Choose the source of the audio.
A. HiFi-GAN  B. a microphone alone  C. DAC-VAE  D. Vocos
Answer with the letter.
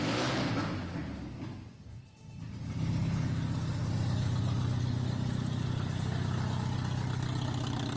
B